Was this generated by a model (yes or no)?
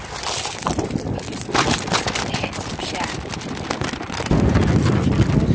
no